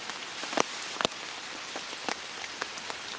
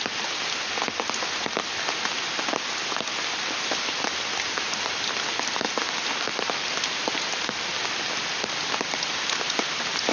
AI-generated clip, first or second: first